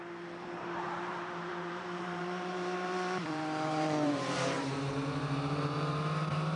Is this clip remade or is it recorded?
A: remade